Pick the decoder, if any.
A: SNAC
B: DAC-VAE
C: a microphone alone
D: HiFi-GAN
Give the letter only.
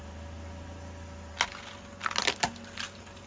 C